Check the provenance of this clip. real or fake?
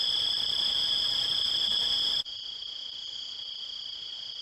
real